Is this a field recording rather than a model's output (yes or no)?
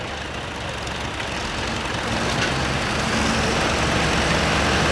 yes